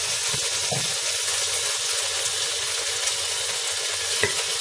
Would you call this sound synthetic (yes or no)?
yes